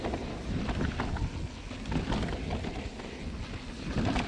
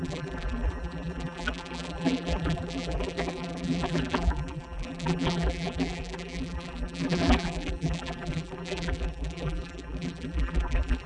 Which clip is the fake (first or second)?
second